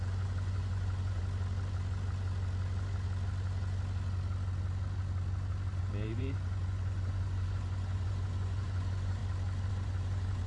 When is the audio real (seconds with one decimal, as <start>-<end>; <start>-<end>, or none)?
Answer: 1.2-5.8; 9.2-9.7